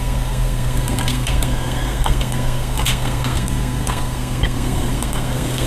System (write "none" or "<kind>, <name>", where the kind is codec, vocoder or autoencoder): codec, SNAC